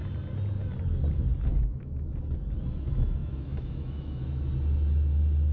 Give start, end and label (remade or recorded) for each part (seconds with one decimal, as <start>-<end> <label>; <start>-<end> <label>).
0.0-1.5 recorded; 1.5-2.1 remade; 2.1-3.2 recorded; 3.2-4.5 remade; 4.5-5.5 recorded